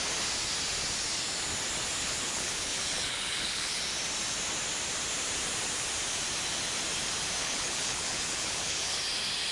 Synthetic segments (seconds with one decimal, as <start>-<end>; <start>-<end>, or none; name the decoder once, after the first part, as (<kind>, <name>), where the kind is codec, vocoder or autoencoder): 2.0-3.8 (codec, HILCodec); 7.4-9.0